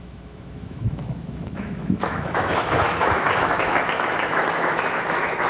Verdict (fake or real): fake